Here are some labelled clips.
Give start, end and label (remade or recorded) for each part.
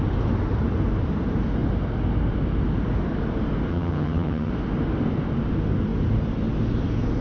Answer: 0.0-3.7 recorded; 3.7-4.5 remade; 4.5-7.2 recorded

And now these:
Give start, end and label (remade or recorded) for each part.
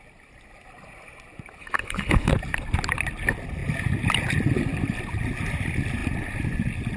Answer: 0.0-1.6 recorded; 1.6-2.3 remade; 2.3-7.0 recorded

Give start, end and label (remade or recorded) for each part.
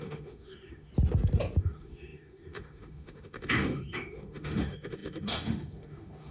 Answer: 0.0-0.9 remade; 0.9-1.6 recorded; 1.6-6.3 remade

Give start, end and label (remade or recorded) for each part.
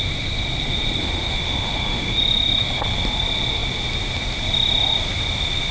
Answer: 0.0-1.0 recorded; 1.0-2.2 remade; 2.2-5.7 recorded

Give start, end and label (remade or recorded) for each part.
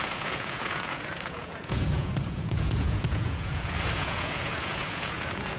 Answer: 0.0-5.6 remade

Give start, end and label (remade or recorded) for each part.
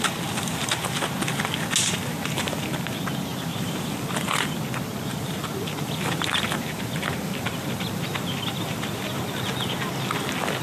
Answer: 0.0-3.3 recorded; 3.3-4.5 remade; 4.5-5.1 recorded; 5.1-9.2 remade; 9.2-10.6 recorded